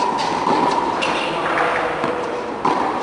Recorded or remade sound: recorded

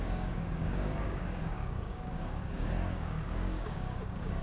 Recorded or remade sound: remade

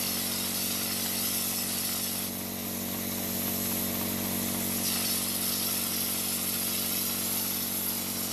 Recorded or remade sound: recorded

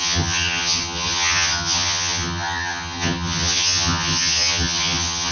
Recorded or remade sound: remade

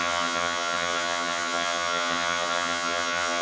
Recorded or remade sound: remade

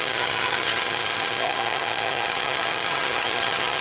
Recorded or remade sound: remade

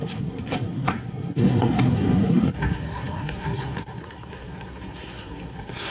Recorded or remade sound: remade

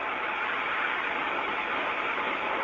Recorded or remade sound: recorded